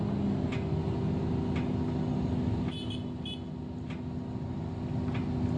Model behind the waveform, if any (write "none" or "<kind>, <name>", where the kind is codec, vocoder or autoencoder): none